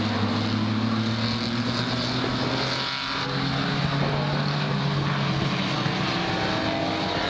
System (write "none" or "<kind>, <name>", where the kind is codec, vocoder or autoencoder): none